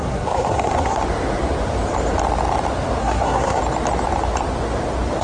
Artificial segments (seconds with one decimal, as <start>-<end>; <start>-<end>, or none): 0.0-1.0; 3.0-3.6